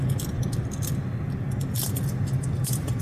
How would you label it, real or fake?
real